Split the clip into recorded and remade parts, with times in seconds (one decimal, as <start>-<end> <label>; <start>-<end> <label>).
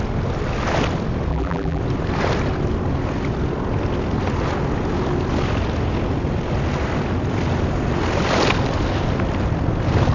0.0-1.3 recorded; 1.3-1.8 remade; 1.8-10.1 recorded